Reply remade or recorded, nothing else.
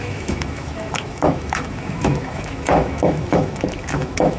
remade